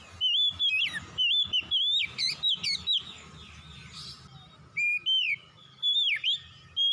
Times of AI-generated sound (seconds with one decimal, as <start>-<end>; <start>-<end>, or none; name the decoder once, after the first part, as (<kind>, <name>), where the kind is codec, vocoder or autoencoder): none